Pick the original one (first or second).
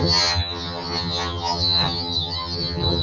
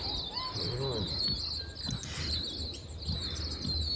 second